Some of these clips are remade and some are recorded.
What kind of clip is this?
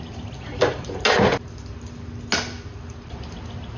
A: recorded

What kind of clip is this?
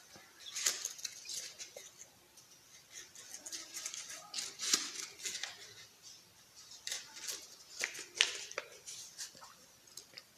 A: recorded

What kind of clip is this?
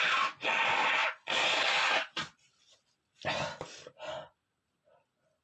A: recorded